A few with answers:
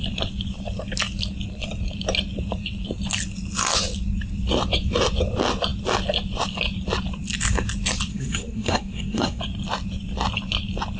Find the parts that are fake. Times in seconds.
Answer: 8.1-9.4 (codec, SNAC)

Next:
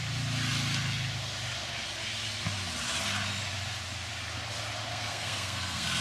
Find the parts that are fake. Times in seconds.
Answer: 4.9-6.0 (codec, SNAC)

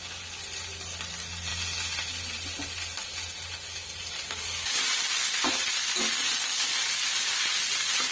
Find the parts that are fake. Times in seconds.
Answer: none

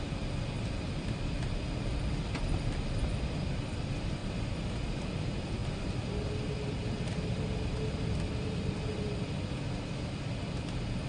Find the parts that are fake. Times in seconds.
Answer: none

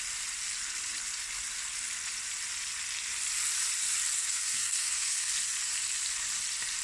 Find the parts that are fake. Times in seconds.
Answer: 4.2-5.3 (codec, SNAC)

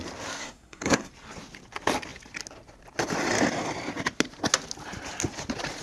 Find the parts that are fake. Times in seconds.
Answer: 0.4-1.1 (codec, SNAC)

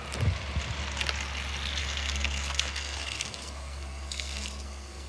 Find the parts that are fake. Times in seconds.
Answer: 1.8-5.1 (codec, SNAC)